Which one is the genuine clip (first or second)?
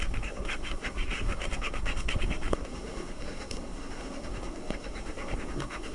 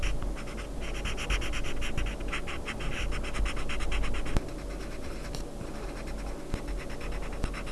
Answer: second